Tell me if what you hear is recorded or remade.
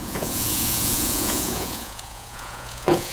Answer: remade